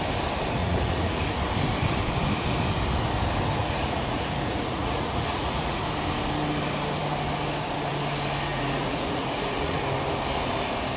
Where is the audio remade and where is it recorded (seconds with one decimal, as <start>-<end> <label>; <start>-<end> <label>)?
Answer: 0.0-0.6 recorded; 0.6-1.2 remade; 1.2-3.6 recorded; 3.6-5.8 remade; 5.8-8.5 recorded; 8.5-9.8 remade; 9.8-11.0 recorded